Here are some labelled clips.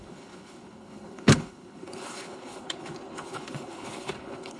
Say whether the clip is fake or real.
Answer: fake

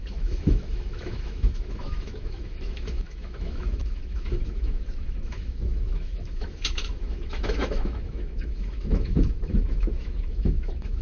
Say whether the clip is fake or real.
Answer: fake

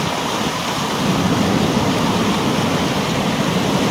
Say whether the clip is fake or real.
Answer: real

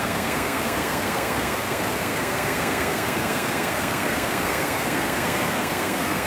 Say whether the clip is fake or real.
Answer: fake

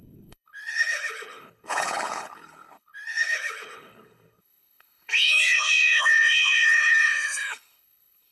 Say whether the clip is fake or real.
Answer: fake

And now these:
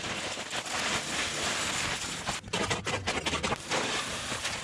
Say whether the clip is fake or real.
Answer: real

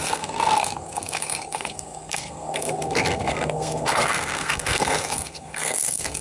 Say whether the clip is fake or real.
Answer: fake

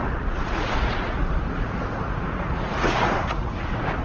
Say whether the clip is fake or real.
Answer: fake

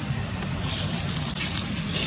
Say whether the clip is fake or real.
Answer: real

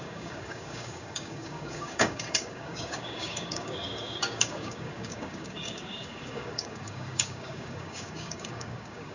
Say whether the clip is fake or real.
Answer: fake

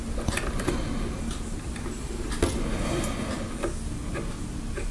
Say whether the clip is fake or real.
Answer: real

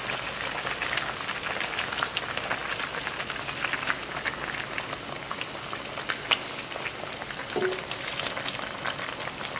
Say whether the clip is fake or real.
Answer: real